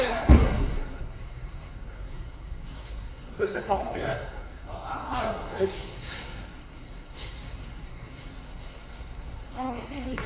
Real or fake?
fake